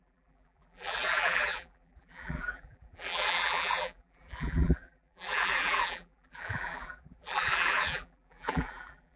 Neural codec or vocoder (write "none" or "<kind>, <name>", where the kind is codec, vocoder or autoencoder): vocoder, BigVGAN v2